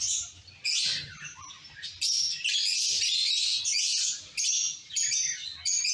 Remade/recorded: recorded